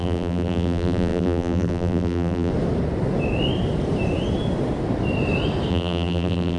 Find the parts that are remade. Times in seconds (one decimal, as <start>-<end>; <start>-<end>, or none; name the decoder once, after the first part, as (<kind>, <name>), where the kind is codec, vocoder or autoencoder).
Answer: 0.0-2.5 (vocoder, BigVGAN v2); 5.7-6.6

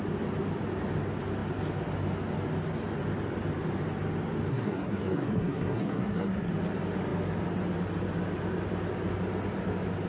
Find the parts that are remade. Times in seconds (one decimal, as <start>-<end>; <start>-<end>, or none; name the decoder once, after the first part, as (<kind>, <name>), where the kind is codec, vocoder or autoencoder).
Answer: 4.5-6.5 (codec, SNAC)

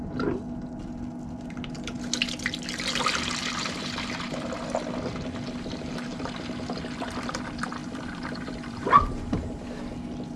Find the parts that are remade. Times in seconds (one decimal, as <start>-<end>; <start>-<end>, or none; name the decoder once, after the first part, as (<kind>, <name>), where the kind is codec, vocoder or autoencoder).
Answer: 7.8-9.3 (vocoder, BigVGAN v2)

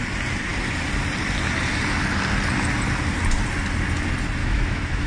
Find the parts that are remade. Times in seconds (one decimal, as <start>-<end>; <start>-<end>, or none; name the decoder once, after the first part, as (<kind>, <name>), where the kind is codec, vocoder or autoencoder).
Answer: 4.4-5.1 (autoencoder, DAC-VAE)